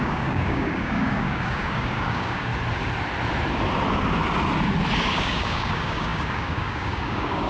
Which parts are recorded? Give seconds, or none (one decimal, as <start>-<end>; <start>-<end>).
2.5-5.0